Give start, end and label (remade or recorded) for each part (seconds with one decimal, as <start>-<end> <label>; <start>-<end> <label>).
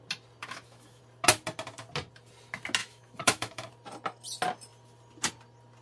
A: 0.0-0.4 recorded; 0.4-1.0 remade; 1.0-2.8 recorded; 2.8-3.7 remade; 3.7-5.8 recorded